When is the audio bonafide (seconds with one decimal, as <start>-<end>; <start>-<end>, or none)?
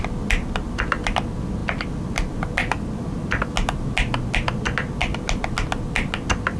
0.0-6.6